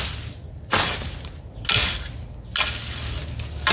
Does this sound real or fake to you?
real